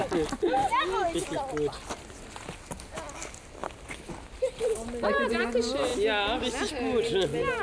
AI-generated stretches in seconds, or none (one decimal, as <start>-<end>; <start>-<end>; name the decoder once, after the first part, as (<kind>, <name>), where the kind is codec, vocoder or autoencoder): none